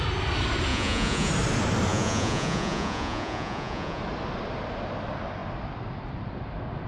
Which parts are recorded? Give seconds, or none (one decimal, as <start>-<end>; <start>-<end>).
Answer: 0.0-0.7; 1.3-1.9; 4.0-6.9